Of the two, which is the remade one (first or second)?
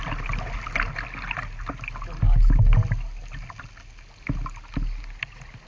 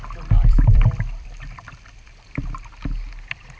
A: second